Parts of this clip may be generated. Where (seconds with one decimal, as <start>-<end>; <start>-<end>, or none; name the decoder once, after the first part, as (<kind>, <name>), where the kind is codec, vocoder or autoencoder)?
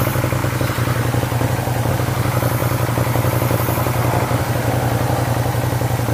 none